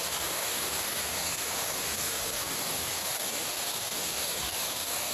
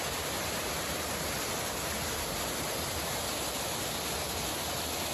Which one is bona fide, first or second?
second